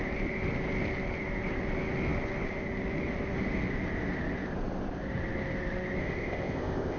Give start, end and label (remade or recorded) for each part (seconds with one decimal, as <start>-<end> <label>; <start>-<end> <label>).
0.0-6.0 recorded; 6.0-7.0 remade